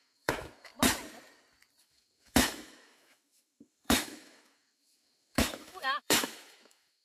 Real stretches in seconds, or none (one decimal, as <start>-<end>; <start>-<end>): 0.7-1.8